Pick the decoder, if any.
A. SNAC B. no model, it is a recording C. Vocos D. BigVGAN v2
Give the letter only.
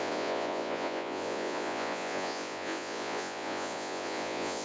C